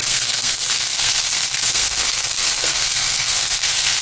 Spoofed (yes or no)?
yes